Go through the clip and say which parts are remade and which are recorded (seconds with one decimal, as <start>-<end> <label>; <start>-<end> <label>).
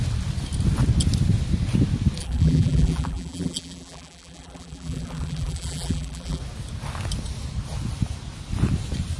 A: 0.0-2.2 recorded; 2.2-6.4 remade; 6.4-9.2 recorded